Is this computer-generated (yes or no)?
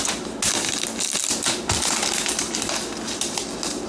no